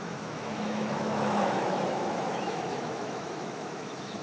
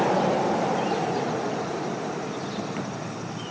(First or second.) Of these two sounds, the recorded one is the second